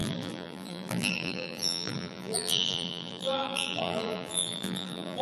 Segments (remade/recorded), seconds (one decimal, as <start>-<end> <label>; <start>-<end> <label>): 0.0-5.2 remade